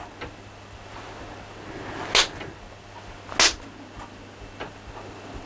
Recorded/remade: recorded